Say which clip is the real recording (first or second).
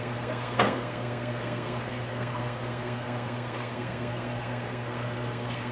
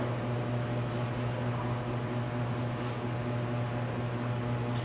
second